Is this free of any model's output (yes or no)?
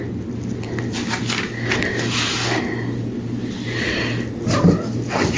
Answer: yes